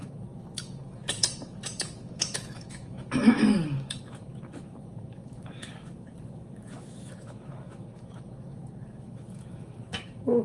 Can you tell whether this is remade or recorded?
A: remade